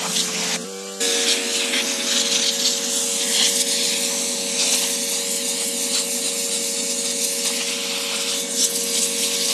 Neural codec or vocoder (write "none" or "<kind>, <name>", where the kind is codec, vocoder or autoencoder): none